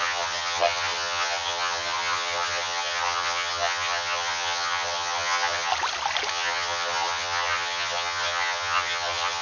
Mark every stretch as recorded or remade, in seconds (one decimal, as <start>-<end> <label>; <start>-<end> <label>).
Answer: 0.0-5.7 remade; 5.7-6.3 recorded; 6.3-9.4 remade